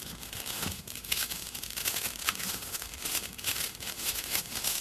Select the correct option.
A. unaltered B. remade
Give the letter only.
B